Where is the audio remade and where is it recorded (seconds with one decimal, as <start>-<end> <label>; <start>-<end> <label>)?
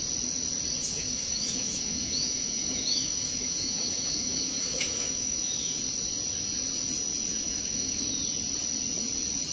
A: 0.0-0.8 recorded; 0.8-5.8 remade; 5.8-7.3 recorded; 7.3-8.0 remade; 8.0-9.5 recorded